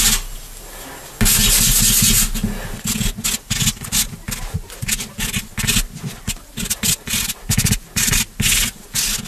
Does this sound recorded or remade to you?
recorded